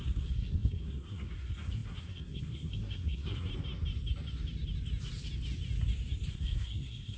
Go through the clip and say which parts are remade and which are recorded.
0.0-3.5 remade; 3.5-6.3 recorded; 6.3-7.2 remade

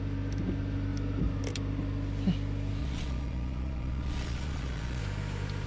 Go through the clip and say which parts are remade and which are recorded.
0.0-2.8 recorded; 2.8-5.0 remade; 5.0-5.7 recorded

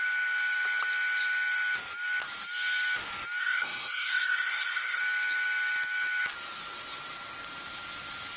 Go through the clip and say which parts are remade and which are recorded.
0.0-3.4 recorded; 3.4-5.0 remade; 5.0-8.4 recorded

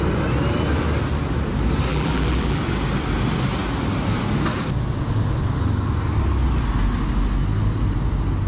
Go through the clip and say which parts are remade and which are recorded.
0.0-1.9 recorded; 1.9-2.6 remade; 2.6-8.5 recorded